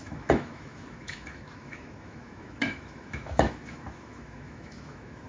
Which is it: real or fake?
fake